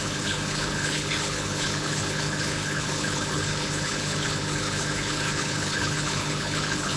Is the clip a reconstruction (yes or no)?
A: yes